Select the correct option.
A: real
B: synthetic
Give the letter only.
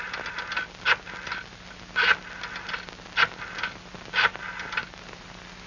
A